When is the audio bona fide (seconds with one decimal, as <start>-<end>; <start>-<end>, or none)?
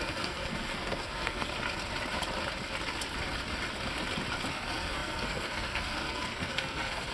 1.5-4.5